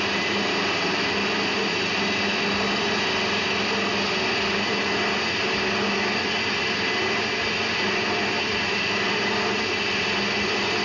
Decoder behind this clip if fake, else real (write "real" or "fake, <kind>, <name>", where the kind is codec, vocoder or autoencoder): real